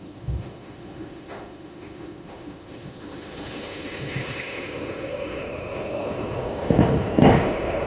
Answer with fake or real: fake